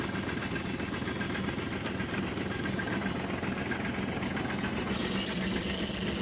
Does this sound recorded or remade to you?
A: recorded